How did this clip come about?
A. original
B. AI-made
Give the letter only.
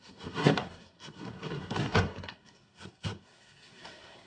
B